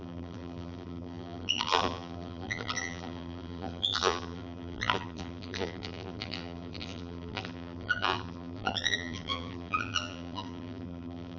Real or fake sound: fake